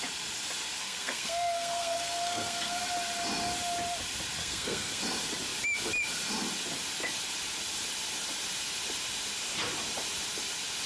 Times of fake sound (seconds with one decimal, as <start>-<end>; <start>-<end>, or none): 0.8-2.8; 4.4-5.0